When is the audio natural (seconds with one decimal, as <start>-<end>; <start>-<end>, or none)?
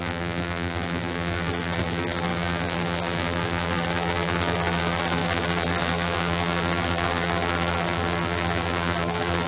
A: none